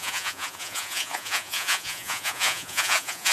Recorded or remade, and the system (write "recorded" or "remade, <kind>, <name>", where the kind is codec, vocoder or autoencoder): remade, vocoder, Vocos